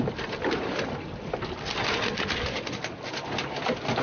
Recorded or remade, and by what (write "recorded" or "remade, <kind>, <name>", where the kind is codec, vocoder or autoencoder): recorded